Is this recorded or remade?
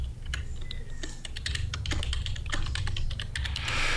recorded